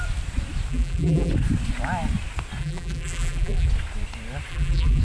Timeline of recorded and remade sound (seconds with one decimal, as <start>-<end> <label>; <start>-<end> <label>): 0.0-0.7 recorded; 0.7-1.3 remade; 1.3-2.6 recorded; 2.6-3.7 remade; 3.7-4.5 recorded; 4.5-5.0 remade